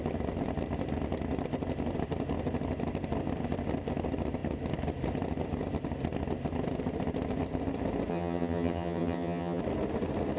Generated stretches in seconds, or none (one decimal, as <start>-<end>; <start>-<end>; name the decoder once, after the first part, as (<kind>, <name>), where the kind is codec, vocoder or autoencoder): 8.1-9.6 (vocoder, HiFi-GAN)